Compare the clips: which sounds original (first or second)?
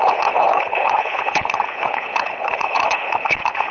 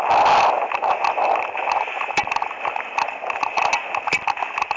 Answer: second